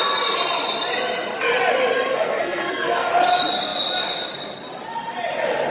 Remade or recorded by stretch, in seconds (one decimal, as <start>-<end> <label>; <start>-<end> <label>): 0.0-2.1 recorded; 2.1-3.1 remade; 3.1-5.7 recorded